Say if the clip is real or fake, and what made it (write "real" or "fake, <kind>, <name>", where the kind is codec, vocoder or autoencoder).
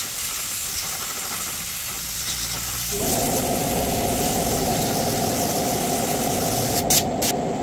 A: real